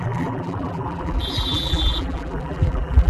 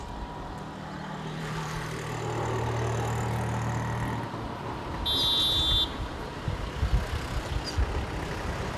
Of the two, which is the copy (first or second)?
first